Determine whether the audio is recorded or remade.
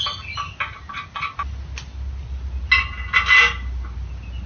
recorded